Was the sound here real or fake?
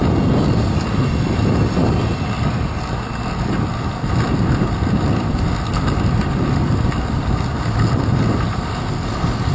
real